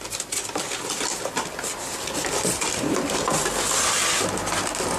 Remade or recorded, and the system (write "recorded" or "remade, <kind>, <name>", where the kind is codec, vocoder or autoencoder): recorded